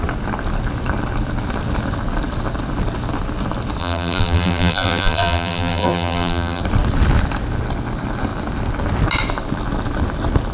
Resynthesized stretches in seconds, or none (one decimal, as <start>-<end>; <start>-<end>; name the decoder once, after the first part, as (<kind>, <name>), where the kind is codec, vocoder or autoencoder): 3.8-6.6 (vocoder, BigVGAN v2)